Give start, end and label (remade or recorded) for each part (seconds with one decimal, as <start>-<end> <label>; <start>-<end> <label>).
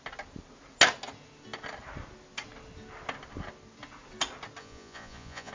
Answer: 0.0-4.6 recorded; 4.6-5.5 remade